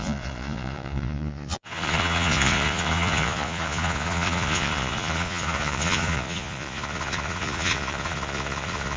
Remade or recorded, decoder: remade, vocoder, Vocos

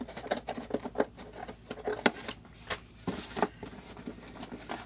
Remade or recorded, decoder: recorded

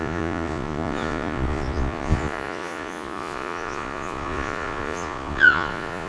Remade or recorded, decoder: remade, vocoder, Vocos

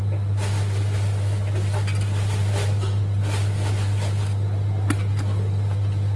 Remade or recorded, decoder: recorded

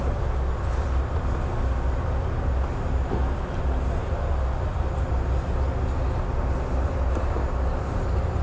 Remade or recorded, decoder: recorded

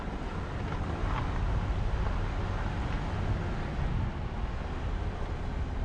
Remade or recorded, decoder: recorded